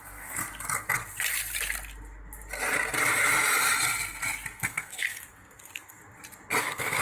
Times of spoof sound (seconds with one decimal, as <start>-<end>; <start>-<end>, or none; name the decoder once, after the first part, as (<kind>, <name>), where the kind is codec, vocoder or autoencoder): 0.0-0.4 (codec, SNAC); 4.6-6.0; 6.6-7.0